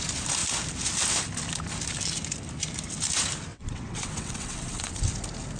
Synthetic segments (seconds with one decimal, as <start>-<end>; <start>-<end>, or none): 3.5-5.0